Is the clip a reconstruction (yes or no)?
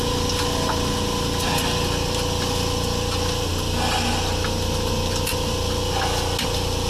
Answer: no